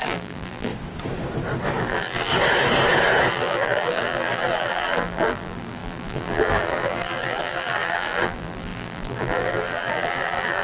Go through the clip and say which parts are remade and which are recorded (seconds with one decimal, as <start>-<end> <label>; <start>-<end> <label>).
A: 0.0-0.7 remade; 0.7-1.8 recorded; 1.8-2.3 remade; 2.3-3.3 recorded; 3.3-10.6 remade